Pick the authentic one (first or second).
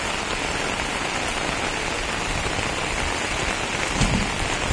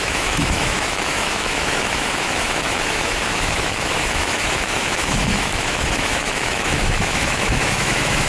first